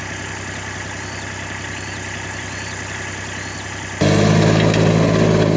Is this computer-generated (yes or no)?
no